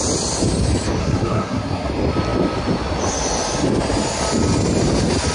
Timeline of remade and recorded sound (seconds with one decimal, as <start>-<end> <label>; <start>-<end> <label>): 0.0-1.0 recorded; 1.0-1.9 remade; 1.9-5.3 recorded